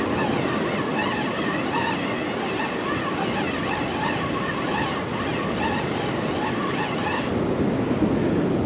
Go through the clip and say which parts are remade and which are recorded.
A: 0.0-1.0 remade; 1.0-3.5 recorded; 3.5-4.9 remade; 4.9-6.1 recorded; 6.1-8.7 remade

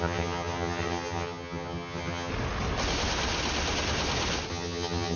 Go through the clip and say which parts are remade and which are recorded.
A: 0.0-2.3 remade; 2.3-4.5 recorded; 4.5-5.2 remade

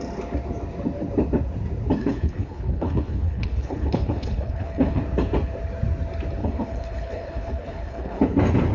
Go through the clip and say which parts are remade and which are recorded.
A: 0.0-2.0 recorded; 2.0-5.0 remade; 5.0-6.4 recorded; 6.4-8.2 remade; 8.2-8.7 recorded

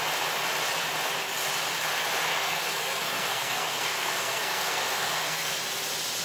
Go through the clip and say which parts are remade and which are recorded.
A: 0.0-2.3 recorded; 2.3-5.6 remade; 5.6-6.2 recorded

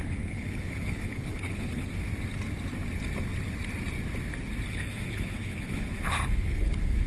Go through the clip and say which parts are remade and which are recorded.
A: 0.0-1.9 remade; 1.9-4.7 recorded; 4.7-7.1 remade

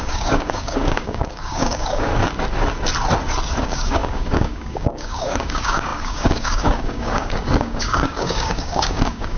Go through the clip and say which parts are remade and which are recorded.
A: 0.0-2.1 remade; 2.1-3.6 recorded; 3.6-9.4 remade

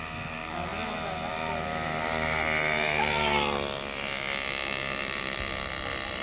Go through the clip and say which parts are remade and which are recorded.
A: 0.0-6.2 recorded